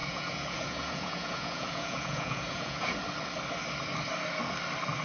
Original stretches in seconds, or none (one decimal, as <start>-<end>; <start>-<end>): 3.0-5.0